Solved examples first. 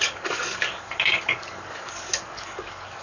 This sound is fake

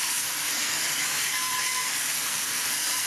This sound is fake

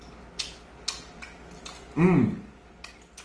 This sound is real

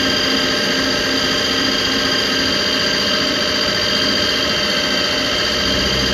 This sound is real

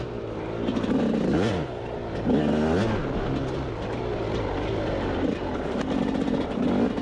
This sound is real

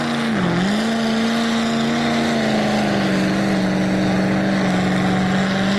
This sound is real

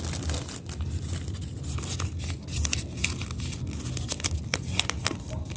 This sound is real